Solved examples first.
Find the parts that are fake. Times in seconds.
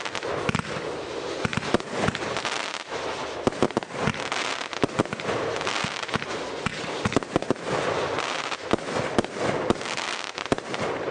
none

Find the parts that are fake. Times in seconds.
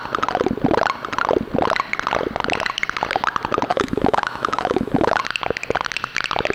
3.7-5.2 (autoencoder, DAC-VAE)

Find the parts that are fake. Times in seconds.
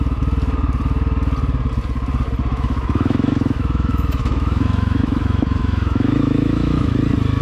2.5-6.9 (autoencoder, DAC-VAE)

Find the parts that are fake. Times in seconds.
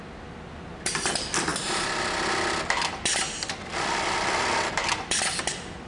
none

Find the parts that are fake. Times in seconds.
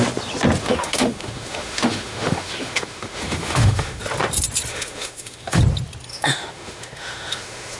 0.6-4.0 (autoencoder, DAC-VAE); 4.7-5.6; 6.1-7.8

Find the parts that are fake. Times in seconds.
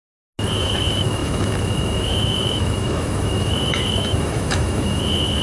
0.5-5.4 (autoencoder, DAC-VAE)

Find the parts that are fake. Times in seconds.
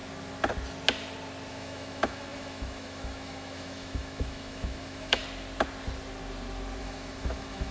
1.5-5.2 (autoencoder, DAC-VAE); 6.8-7.7